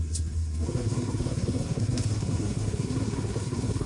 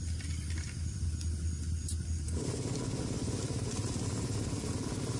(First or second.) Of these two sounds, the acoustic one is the second